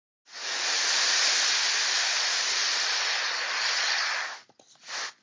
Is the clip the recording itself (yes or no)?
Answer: yes